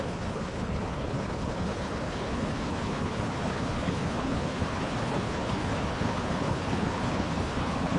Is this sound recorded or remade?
remade